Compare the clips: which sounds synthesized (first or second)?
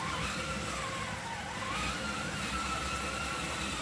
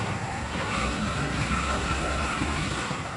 second